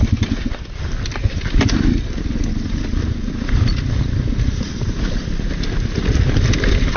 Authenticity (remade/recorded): recorded